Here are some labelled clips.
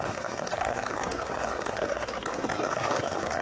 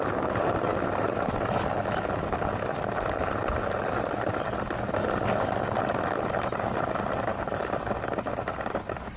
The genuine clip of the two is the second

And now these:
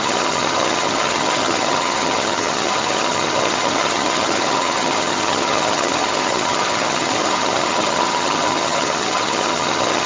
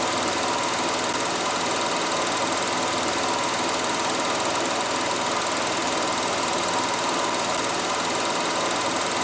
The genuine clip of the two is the second